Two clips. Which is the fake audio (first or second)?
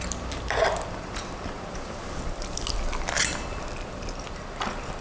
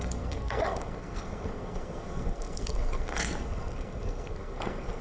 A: second